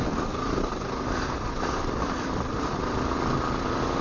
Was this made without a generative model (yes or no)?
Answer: yes